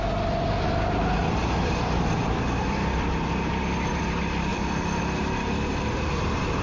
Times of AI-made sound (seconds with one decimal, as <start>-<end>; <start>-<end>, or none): 1.4-3.1; 4.5-6.6